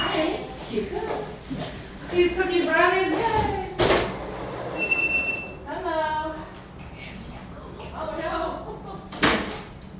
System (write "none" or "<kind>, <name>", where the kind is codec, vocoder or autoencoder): none